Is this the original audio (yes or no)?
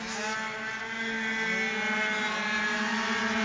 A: yes